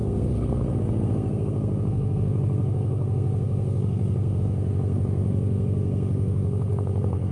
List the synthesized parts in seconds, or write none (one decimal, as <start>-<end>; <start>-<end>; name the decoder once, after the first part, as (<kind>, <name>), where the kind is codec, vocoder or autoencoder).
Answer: 0.0-7.3 (codec, SNAC)